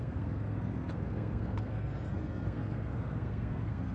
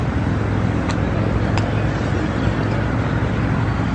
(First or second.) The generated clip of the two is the first